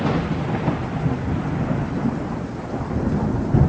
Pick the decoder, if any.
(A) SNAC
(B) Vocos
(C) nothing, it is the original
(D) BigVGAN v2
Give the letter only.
C